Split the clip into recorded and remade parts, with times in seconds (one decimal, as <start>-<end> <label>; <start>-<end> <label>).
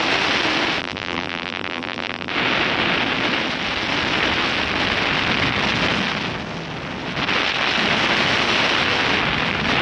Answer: 0.0-0.8 recorded; 0.8-2.3 remade; 2.3-9.8 recorded